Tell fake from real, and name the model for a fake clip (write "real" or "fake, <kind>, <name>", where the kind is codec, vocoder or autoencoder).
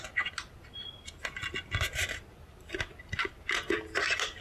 real